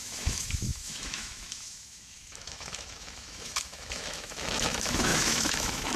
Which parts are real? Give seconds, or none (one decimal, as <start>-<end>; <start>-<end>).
none